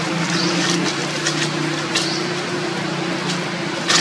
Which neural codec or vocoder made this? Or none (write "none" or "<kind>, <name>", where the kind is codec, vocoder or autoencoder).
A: none